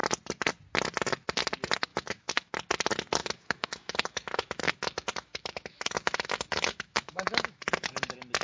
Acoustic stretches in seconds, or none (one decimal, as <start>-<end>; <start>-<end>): 0.0-1.9; 2.5-3.2; 7.9-8.4